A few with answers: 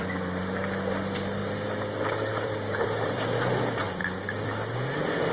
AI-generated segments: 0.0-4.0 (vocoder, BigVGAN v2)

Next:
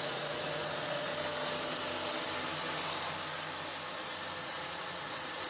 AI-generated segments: 0.0-1.1 (vocoder, Vocos); 4.4-5.5

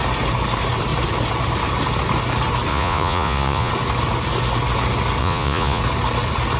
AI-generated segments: 2.7-3.7 (vocoder, Vocos); 5.2-5.8

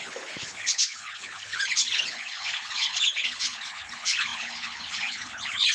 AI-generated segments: 0.0-5.7 (codec, HILCodec)

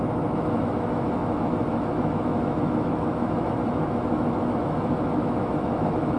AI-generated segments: 0.0-6.2 (autoencoder, DAC-VAE)

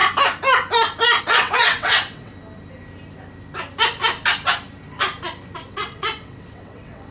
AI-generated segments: 1.2-2.3 (vocoder, WaveNeXt); 5.4-7.1

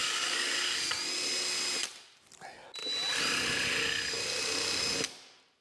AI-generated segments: 0.0-0.5 (codec, DAC)